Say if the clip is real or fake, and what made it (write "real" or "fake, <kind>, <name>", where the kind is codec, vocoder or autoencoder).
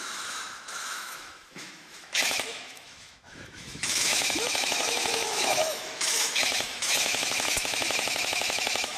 fake, autoencoder, DAC-VAE